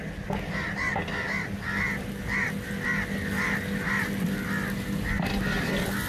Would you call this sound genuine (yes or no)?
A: yes